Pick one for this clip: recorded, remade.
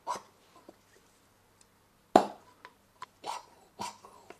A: recorded